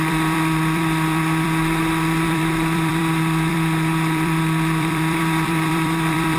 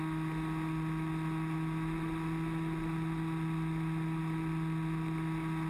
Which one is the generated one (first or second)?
first